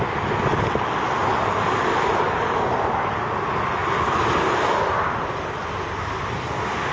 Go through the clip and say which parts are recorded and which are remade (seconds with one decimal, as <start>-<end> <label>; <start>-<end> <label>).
0.0-6.9 recorded

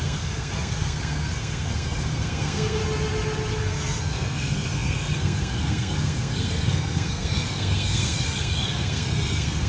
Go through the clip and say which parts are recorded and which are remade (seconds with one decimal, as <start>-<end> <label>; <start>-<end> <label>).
0.0-2.8 remade; 2.8-3.6 recorded; 3.6-9.7 remade

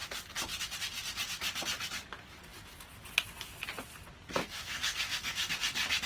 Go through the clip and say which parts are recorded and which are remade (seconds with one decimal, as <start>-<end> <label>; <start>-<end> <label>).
0.0-4.4 recorded; 4.4-5.5 remade; 5.5-6.1 recorded

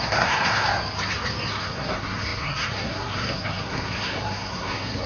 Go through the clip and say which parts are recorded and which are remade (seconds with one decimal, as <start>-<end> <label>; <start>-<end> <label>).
0.0-0.7 remade; 0.7-1.5 recorded; 1.5-5.1 remade

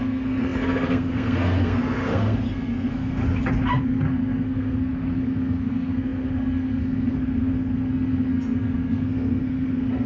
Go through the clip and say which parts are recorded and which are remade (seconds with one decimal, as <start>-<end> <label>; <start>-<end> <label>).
0.0-3.2 remade; 3.2-3.8 recorded; 3.8-10.1 remade

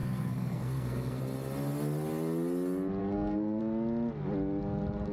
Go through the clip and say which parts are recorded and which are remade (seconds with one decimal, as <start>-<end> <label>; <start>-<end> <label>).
0.0-1.2 remade; 1.2-3.0 recorded; 3.0-3.6 remade; 3.6-5.1 recorded